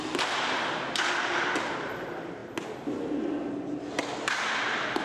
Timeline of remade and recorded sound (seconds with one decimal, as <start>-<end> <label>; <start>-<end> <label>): 0.0-5.0 recorded